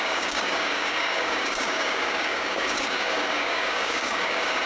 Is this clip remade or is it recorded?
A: remade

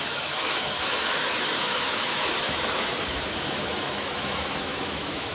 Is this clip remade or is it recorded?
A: remade